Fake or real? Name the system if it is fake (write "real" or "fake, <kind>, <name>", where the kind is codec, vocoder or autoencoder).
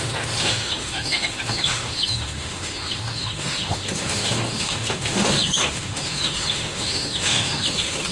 fake, autoencoder, DAC-VAE